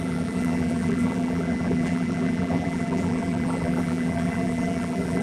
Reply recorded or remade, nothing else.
remade